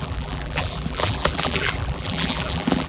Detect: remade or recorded remade